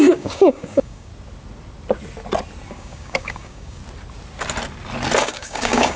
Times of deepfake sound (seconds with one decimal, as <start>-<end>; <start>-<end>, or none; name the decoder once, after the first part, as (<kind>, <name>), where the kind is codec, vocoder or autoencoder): 0.0-1.1 (codec, DAC); 2.7-3.8; 5.2-6.0